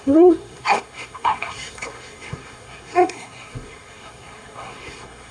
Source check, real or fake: fake